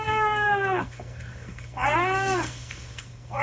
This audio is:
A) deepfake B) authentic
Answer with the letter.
A